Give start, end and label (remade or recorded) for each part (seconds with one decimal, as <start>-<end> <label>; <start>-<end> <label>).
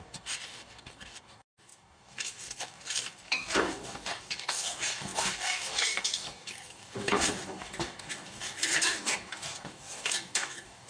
0.0-10.9 remade